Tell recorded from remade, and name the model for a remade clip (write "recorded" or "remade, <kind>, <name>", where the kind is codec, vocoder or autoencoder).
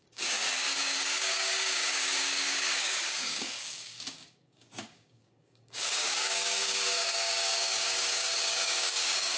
remade, codec, DAC